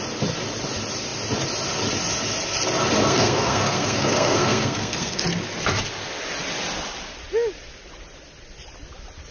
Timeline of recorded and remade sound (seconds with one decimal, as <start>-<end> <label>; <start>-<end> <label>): 0.0-3.0 recorded; 3.0-5.2 remade; 5.2-9.3 recorded